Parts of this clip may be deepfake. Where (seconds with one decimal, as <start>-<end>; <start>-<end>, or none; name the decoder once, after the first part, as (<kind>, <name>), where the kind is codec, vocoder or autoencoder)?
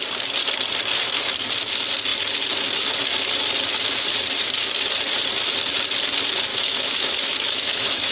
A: 6.5-8.1 (autoencoder, DAC-VAE)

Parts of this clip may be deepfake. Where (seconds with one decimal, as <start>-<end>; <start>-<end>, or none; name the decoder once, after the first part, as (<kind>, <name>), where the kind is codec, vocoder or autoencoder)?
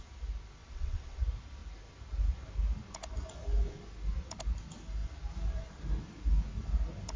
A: 0.6-1.2 (vocoder, WaveNeXt)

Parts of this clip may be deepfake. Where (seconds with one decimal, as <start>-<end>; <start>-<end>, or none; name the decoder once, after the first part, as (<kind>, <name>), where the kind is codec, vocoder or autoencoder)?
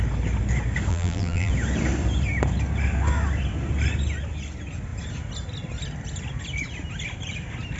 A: 0.9-1.5 (vocoder, BigVGAN v2)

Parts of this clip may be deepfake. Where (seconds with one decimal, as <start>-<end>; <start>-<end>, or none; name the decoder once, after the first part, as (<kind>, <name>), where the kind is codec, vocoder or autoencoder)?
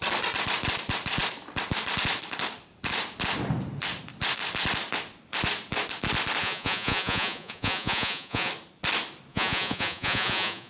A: 6.4-8.5 (vocoder, Vocos); 9.3-10.7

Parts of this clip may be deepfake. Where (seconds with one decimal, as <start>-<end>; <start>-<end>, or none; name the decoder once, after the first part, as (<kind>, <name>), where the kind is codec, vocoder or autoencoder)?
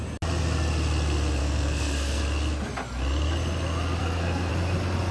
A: 1.4-2.2 (codec, SNAC); 4.0-4.5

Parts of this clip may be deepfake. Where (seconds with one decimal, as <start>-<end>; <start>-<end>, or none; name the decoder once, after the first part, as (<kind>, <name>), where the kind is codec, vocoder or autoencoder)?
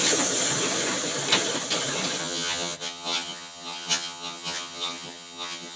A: 2.2-5.8 (vocoder, HiFi-GAN)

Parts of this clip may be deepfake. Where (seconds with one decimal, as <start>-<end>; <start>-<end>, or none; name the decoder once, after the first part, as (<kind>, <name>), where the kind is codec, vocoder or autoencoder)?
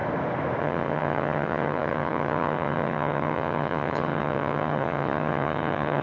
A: 0.6-6.0 (vocoder, HiFi-GAN)